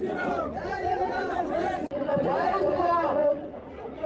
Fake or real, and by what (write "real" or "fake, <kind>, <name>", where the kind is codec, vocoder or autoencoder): fake, vocoder, Vocos